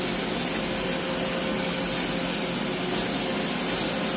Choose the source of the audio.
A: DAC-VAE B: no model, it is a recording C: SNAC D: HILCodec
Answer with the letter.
B